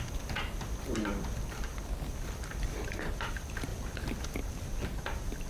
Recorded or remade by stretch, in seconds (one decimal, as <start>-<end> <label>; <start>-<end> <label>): 0.0-5.5 recorded